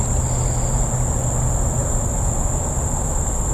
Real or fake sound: real